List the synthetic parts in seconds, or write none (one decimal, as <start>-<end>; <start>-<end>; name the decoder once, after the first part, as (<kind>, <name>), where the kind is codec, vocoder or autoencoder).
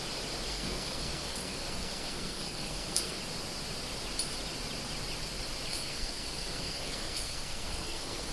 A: 0.5-3.2 (codec, SNAC); 5.7-8.3